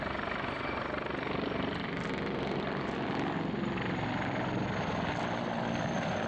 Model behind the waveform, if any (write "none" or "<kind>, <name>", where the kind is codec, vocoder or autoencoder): none